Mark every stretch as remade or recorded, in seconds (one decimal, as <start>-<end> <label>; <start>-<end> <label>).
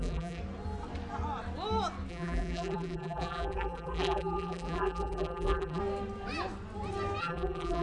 0.0-0.4 remade; 0.4-2.1 recorded; 2.1-5.8 remade; 5.8-7.2 recorded; 7.2-7.8 remade